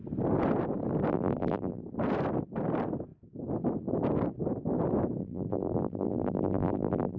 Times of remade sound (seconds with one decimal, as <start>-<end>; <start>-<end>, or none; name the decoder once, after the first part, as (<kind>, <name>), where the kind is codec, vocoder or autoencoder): 1.1-1.8 (vocoder, BigVGAN v2); 5.2-7.2